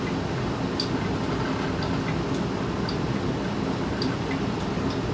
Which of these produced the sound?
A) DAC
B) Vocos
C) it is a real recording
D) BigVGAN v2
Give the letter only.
C